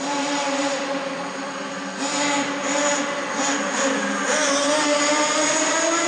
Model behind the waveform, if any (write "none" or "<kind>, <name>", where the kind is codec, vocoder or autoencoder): none